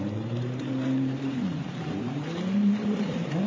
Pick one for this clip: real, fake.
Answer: fake